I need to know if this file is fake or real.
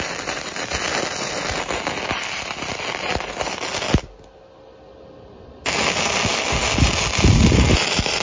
real